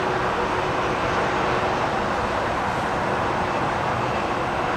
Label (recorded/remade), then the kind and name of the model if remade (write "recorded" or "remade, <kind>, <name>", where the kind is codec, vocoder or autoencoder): recorded